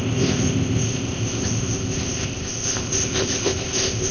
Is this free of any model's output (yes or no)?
no